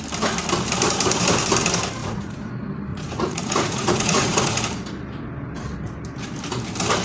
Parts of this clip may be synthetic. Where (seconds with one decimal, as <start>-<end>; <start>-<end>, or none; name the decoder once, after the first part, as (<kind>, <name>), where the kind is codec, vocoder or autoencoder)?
2.0-2.5 (vocoder, Vocos); 2.9-4.6